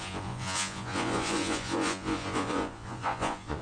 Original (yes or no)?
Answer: no